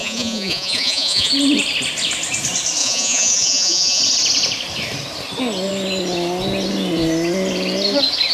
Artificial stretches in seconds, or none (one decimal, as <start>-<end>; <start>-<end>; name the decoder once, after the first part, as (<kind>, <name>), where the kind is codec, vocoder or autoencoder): 0.0-1.3 (vocoder, Vocos); 2.8-4.0